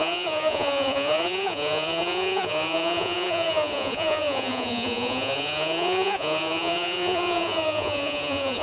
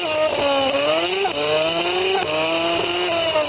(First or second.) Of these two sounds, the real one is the second